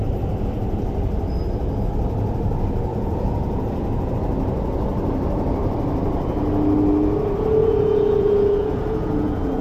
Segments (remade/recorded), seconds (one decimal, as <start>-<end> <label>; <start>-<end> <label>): 0.0-2.9 recorded; 2.9-4.1 remade; 4.1-7.6 recorded; 7.6-9.6 remade